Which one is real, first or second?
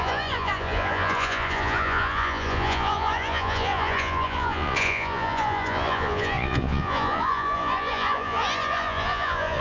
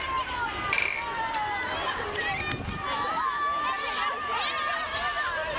second